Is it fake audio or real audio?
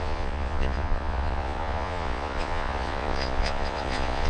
fake